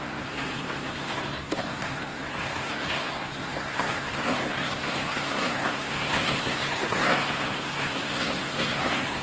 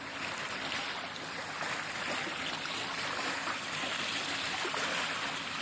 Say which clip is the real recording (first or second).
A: second